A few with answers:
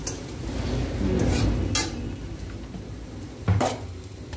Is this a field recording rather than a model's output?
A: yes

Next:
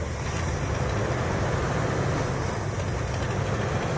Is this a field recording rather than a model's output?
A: yes